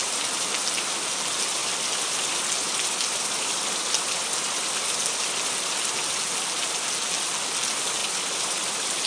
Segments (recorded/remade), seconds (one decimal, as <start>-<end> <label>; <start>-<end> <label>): 0.0-0.5 remade; 0.5-1.6 recorded; 1.6-5.5 remade; 5.5-8.0 recorded; 8.0-9.1 remade